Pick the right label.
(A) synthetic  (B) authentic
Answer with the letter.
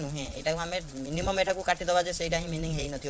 A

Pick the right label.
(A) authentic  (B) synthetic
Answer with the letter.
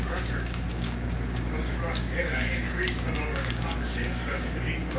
B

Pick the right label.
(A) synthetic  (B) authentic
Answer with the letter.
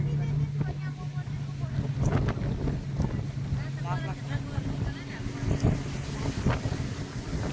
B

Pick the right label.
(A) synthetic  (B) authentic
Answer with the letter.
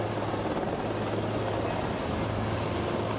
B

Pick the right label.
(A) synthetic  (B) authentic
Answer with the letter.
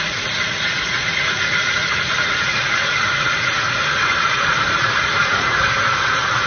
A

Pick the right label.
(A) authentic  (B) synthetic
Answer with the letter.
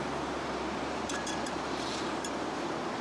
B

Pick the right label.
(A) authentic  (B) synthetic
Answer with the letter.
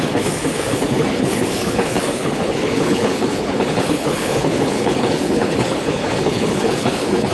B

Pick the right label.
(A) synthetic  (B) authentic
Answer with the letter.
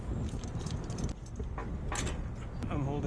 B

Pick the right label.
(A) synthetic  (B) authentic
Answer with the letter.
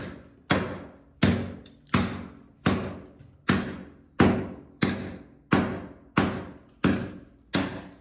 B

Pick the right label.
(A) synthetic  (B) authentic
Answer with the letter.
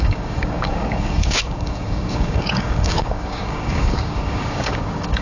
A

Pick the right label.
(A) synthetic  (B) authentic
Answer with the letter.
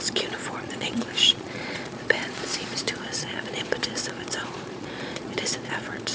A